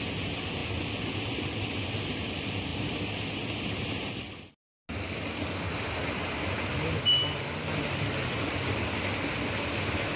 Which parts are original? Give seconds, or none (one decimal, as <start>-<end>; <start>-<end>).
0.0-10.2